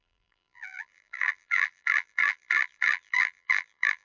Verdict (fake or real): fake